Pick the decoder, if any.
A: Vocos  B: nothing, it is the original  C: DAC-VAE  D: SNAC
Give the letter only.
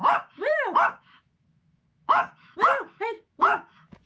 C